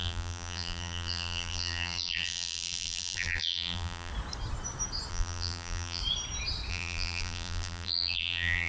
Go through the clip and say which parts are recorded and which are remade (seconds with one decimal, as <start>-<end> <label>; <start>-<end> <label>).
0.0-4.1 remade; 4.1-5.1 recorded; 5.1-6.0 remade; 6.0-6.7 recorded; 6.7-8.7 remade